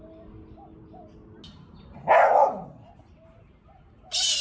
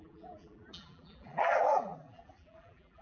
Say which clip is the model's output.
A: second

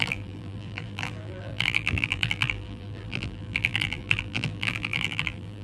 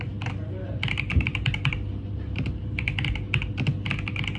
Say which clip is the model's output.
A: first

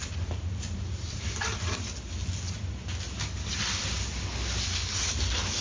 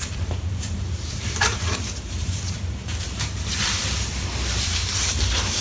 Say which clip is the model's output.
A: second